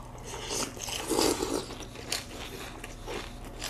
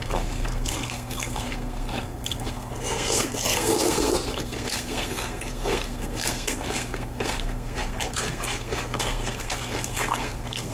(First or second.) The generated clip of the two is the second